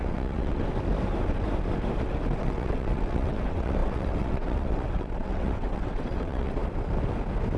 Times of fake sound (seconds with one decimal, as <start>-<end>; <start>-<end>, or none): 0.0-0.6; 2.4-6.6